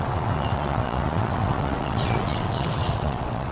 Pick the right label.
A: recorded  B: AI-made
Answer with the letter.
B